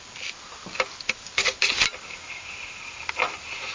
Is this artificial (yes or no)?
no